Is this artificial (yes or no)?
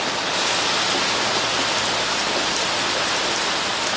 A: no